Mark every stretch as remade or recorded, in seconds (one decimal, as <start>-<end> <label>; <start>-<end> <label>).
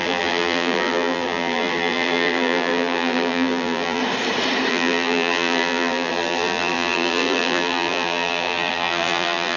0.0-4.0 remade; 4.0-4.7 recorded; 4.7-9.6 remade